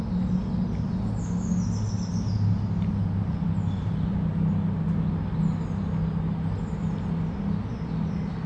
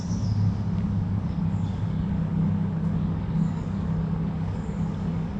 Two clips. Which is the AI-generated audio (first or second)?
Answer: second